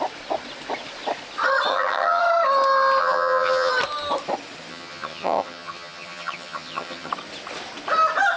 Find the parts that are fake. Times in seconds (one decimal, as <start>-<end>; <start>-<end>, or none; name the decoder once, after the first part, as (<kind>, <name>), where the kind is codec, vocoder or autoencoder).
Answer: 1.7-2.2 (vocoder, HiFi-GAN); 3.0-3.7; 4.7-7.1